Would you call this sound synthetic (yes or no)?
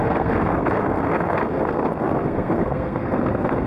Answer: yes